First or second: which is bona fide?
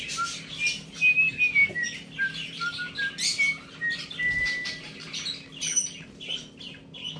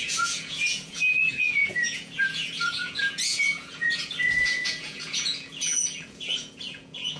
first